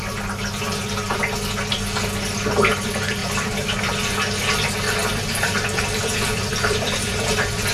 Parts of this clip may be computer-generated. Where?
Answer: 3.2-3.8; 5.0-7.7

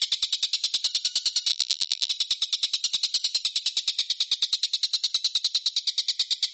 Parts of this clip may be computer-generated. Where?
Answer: 1.5-2.1

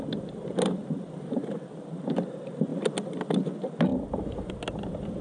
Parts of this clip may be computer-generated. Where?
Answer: 0.8-2.2; 3.9-4.5